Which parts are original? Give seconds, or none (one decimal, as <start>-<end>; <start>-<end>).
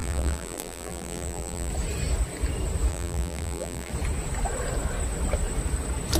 1.7-2.9; 3.9-6.2